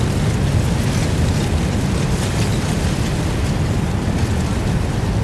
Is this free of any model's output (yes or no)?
yes